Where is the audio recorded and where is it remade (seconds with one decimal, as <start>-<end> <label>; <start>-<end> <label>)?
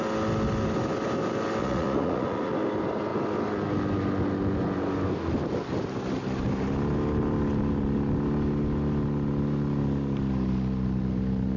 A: 0.0-1.6 recorded; 1.6-2.5 remade; 2.5-11.6 recorded